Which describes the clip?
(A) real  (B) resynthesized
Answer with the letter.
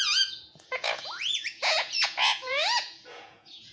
B